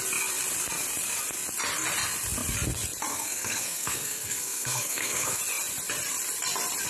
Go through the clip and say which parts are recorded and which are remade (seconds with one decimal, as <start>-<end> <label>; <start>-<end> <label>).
0.0-3.1 recorded; 3.1-5.4 remade; 5.4-6.9 recorded

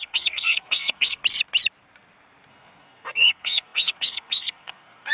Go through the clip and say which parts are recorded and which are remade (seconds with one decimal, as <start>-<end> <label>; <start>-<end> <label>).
0.0-1.2 remade; 1.2-2.5 recorded; 2.5-5.1 remade

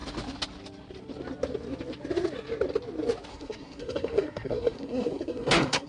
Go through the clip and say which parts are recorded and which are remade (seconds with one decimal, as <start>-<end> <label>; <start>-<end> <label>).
0.0-3.3 recorded; 3.3-5.9 remade

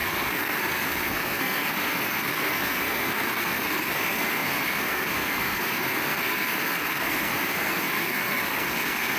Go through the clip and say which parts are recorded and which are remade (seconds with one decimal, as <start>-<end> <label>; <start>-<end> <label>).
0.0-9.2 remade

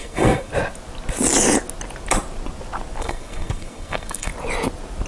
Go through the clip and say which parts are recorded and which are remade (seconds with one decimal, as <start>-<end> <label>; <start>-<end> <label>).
0.0-0.5 remade; 0.5-3.0 recorded; 3.0-4.3 remade; 4.3-5.1 recorded

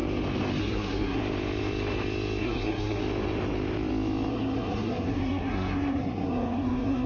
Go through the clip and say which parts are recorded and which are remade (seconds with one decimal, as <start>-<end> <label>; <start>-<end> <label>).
0.0-0.6 recorded; 0.6-1.2 remade; 1.2-2.4 recorded; 2.4-3.0 remade; 3.0-4.3 recorded; 4.3-7.1 remade

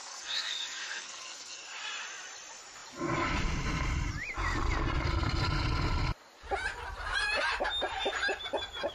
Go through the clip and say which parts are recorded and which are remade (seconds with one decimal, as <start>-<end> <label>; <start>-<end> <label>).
0.0-1.6 remade; 1.6-8.9 recorded